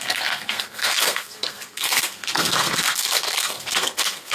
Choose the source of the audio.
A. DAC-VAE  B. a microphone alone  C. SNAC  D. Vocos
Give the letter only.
C